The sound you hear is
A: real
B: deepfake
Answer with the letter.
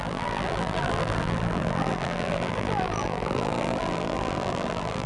B